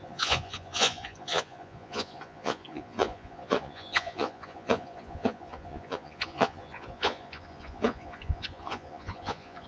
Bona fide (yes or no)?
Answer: no